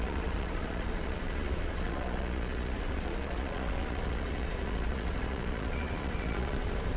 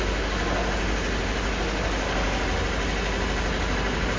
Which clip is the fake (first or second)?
first